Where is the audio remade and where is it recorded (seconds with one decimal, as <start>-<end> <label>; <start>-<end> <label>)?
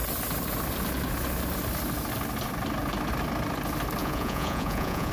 0.0-4.0 recorded; 4.0-5.1 remade